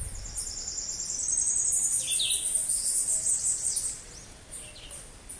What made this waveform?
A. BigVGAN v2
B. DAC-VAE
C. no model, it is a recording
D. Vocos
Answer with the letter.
C